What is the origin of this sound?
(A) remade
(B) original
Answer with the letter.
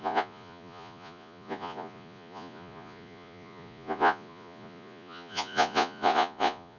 A